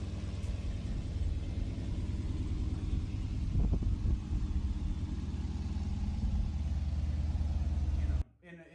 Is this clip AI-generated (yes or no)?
no